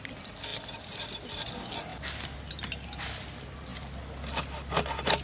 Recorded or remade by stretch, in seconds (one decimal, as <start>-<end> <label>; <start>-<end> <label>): 0.0-5.2 recorded